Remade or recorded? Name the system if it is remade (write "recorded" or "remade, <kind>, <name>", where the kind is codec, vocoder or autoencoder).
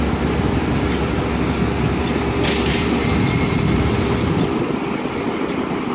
recorded